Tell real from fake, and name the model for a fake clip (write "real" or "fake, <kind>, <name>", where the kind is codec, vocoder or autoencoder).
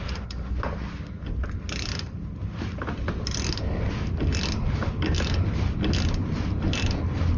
real